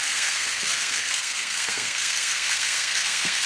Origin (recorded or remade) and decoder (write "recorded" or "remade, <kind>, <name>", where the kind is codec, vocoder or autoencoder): remade, codec, SNAC